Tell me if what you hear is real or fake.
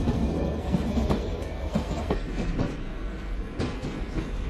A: fake